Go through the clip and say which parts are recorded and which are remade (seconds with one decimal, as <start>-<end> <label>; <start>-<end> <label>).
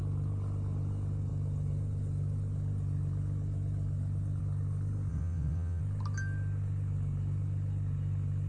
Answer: 0.0-5.1 recorded; 5.1-5.8 remade; 5.8-8.5 recorded